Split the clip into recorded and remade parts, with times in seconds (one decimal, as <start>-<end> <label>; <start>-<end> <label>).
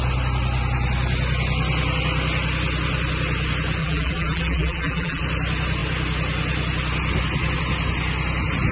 0.0-3.8 recorded; 3.8-5.2 remade; 5.2-8.7 recorded